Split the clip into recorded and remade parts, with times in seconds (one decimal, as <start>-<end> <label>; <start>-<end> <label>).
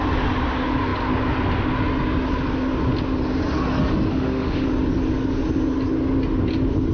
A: 0.0-4.1 recorded; 4.1-4.7 remade; 4.7-6.9 recorded